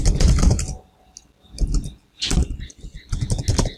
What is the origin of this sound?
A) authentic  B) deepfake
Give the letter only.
A